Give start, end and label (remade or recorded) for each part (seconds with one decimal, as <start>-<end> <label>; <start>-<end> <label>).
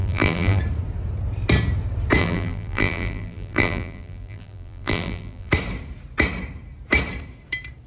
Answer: 0.0-0.6 remade; 0.6-2.2 recorded; 2.2-5.5 remade; 5.5-7.9 recorded